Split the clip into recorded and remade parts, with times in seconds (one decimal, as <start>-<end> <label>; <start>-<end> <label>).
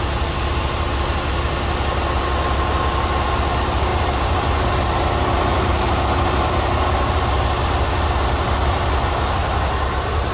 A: 0.0-10.3 recorded